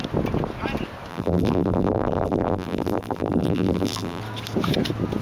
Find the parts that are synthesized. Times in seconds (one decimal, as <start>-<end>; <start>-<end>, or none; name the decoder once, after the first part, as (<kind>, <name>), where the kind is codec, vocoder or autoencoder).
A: 1.1-4.2 (vocoder, BigVGAN v2)